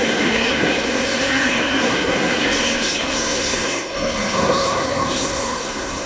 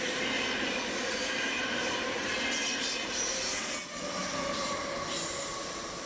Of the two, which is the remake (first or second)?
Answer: first